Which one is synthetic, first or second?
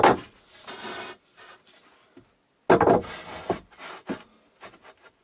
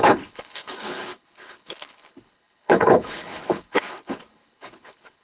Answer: second